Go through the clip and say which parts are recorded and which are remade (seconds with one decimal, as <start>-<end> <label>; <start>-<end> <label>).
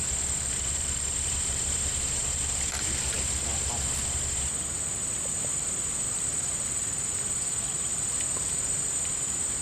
0.0-3.5 remade; 3.5-4.7 recorded; 4.7-7.9 remade; 7.9-8.7 recorded; 8.7-9.6 remade